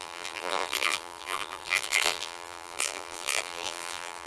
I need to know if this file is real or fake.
fake